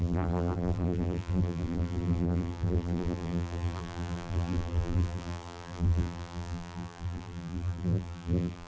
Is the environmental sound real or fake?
fake